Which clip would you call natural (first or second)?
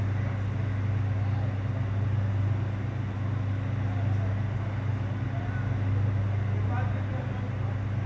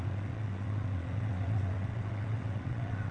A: first